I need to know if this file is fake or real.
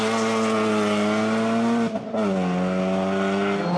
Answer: real